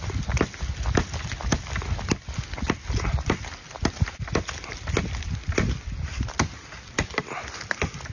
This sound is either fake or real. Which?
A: real